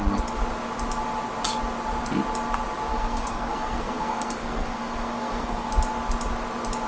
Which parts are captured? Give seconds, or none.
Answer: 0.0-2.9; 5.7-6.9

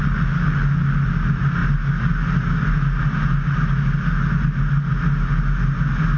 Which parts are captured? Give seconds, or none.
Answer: 0.0-6.2

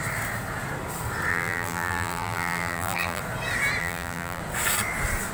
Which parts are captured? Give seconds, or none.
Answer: 0.0-1.3; 3.2-3.8; 4.4-5.3

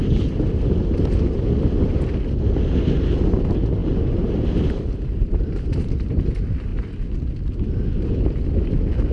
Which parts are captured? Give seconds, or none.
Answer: 0.0-3.8; 5.5-9.1

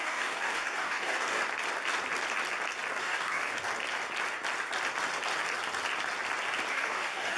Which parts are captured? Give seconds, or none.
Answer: 1.4-3.0; 3.5-6.7